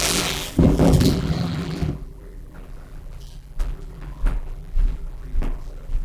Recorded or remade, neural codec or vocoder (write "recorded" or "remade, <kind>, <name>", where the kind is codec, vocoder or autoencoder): remade, vocoder, BigVGAN v2